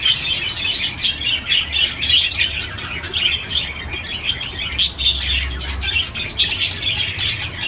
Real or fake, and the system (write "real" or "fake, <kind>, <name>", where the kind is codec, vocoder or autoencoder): real